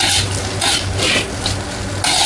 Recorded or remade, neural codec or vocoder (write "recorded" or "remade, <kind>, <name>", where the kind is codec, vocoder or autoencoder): recorded